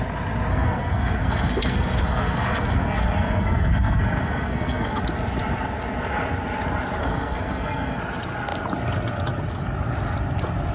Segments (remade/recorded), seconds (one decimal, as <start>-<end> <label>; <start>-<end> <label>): 0.0-0.5 recorded; 0.5-5.0 remade; 5.0-7.0 recorded; 7.0-8.0 remade; 8.0-10.7 recorded